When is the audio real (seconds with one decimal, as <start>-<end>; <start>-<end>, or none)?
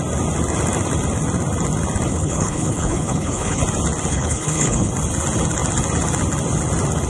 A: 0.0-2.1; 3.6-4.1; 4.9-7.1